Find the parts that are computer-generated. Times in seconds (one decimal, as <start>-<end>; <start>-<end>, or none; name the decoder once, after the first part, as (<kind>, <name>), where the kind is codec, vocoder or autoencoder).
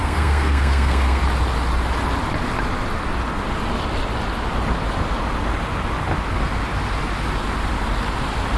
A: 0.0-1.2 (codec, SNAC)